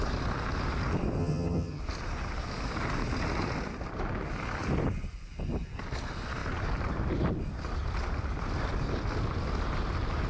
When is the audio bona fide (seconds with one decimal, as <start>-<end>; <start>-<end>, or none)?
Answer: 0.0-1.2; 1.8-10.3